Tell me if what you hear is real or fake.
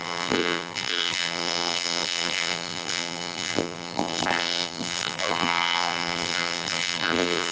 fake